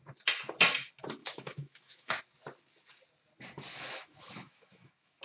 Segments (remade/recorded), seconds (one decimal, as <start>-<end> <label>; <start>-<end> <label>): 0.0-1.2 recorded; 1.2-2.2 remade; 2.2-3.7 recorded; 3.7-5.2 remade